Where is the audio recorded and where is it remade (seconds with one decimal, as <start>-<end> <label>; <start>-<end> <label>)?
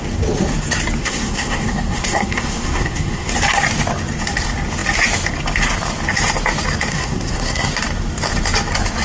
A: 0.0-1.0 recorded; 1.0-3.3 remade; 3.3-6.9 recorded; 6.9-7.7 remade; 7.7-9.0 recorded